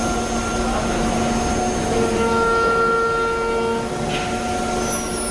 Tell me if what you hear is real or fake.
real